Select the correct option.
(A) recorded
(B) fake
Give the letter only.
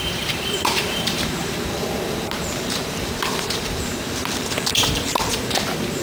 B